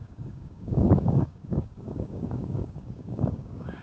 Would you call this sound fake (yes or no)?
yes